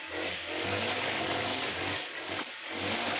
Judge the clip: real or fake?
fake